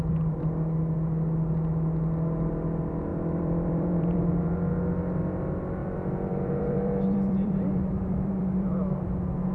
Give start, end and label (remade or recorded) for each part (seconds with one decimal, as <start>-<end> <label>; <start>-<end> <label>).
0.0-3.1 recorded; 3.1-4.5 remade; 4.5-5.8 recorded; 5.8-8.7 remade; 8.7-9.5 recorded